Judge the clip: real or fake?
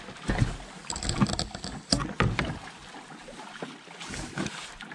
real